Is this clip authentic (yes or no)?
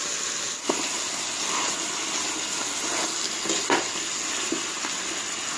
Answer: yes